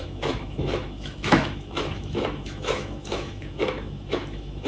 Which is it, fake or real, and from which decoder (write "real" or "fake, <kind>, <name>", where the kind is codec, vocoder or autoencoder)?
fake, autoencoder, DAC-VAE